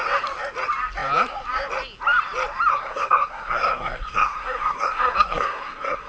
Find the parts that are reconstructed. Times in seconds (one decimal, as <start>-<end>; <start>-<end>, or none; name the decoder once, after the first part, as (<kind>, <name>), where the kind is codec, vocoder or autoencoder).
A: 2.7-6.1 (codec, SNAC)